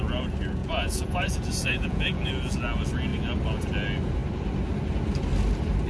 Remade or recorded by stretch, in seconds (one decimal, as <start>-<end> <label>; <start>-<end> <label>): 0.0-0.6 recorded; 0.6-2.3 remade; 2.3-5.9 recorded